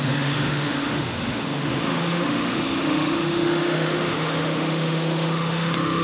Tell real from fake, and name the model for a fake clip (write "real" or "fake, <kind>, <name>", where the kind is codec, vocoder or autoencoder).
fake, autoencoder, DAC-VAE